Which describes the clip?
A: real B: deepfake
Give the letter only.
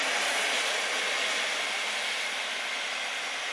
A